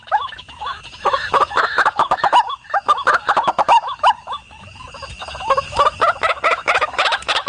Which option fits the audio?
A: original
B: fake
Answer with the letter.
B